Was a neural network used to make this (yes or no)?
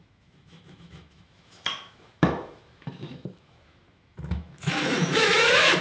yes